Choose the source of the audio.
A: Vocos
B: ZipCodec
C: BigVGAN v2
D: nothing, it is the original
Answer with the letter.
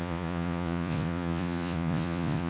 A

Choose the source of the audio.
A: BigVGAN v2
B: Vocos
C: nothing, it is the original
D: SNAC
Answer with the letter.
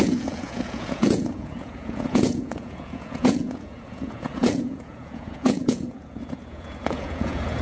B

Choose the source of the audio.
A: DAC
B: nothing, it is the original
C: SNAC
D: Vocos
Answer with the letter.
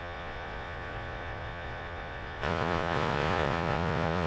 D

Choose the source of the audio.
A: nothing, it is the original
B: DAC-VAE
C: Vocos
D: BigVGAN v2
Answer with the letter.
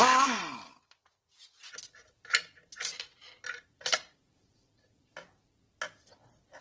A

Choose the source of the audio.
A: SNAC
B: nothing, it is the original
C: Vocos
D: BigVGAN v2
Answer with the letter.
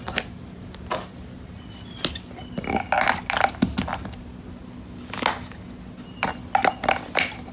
B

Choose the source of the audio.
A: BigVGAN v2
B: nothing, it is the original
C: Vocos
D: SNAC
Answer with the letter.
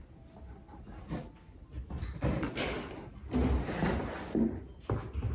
B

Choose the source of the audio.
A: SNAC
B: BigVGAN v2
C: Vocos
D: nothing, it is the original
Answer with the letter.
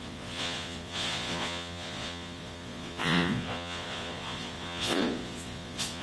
C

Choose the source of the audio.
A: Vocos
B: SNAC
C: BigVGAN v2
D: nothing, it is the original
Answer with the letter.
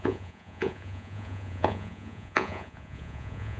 A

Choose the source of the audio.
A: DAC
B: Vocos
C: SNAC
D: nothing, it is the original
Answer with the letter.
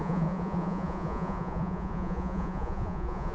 B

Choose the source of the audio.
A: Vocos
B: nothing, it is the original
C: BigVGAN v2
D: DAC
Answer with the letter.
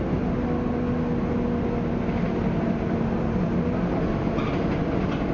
B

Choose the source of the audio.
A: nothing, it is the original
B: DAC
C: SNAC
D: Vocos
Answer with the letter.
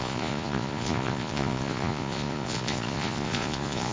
D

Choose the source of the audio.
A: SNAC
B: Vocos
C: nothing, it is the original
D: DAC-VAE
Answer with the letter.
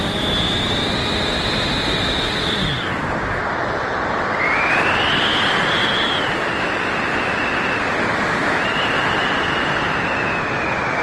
C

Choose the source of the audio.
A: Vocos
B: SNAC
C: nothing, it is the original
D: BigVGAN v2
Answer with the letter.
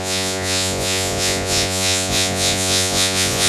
A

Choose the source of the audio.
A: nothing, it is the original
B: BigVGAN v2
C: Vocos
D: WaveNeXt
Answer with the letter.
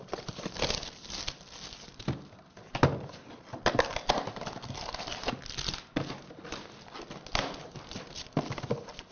A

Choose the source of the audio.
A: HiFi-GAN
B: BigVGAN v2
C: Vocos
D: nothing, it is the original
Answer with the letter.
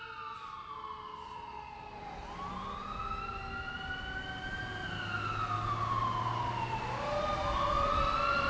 D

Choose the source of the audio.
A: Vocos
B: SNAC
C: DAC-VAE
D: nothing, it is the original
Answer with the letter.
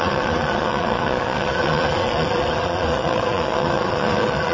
A